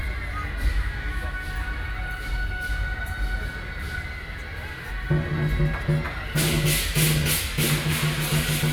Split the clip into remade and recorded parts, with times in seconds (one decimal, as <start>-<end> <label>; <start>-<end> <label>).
0.0-0.7 recorded; 0.7-1.5 remade; 1.5-8.7 recorded